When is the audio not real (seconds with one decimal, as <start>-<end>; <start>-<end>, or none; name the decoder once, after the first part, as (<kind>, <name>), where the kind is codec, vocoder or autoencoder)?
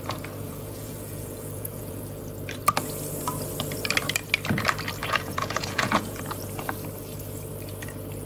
0.4-2.2 (vocoder, Vocos); 5.0-6.2